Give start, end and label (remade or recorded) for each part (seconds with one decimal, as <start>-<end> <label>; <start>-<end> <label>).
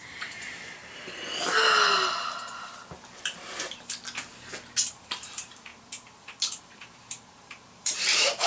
0.0-0.8 remade; 0.8-4.9 recorded; 4.9-5.7 remade; 5.7-6.6 recorded; 6.6-8.5 remade